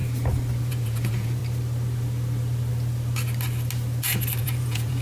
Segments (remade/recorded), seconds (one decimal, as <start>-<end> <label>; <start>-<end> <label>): 0.0-0.6 recorded; 0.6-1.4 remade; 1.4-4.4 recorded; 4.4-5.0 remade